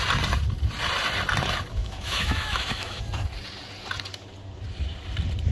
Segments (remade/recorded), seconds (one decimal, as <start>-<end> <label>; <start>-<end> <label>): 0.0-1.8 recorded; 1.8-3.0 remade; 3.0-5.5 recorded